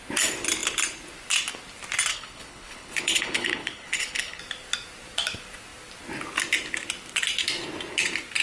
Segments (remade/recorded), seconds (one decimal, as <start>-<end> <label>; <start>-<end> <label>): 0.0-2.1 recorded; 2.1-4.4 remade; 4.4-8.4 recorded